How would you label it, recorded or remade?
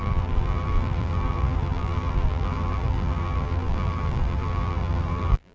remade